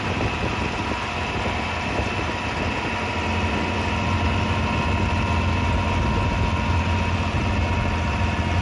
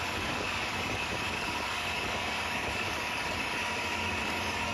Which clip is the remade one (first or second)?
second